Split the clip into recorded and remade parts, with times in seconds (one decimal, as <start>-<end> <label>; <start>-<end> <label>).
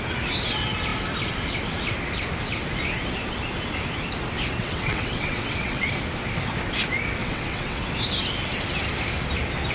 0.0-4.6 recorded; 4.6-5.9 remade; 5.9-7.2 recorded; 7.2-7.8 remade; 7.8-9.7 recorded